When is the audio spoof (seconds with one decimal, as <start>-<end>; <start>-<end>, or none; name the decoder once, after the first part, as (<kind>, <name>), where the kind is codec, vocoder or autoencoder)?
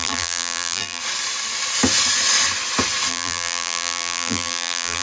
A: 0.0-1.0 (vocoder, BigVGAN v2); 3.1-5.0